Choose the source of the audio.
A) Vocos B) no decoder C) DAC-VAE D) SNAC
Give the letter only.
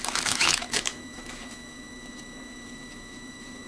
C